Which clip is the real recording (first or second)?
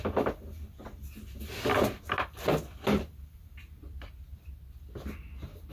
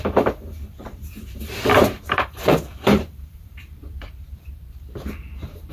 first